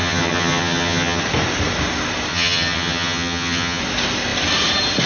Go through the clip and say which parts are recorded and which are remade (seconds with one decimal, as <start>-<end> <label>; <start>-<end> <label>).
0.0-1.2 remade; 1.2-2.3 recorded; 2.3-3.8 remade; 3.8-5.1 recorded